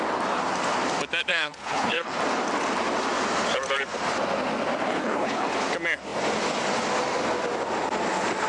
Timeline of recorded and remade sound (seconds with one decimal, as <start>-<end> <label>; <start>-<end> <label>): 0.0-1.3 recorded; 1.3-2.2 remade; 2.2-4.9 recorded; 4.9-5.6 remade; 5.6-8.5 recorded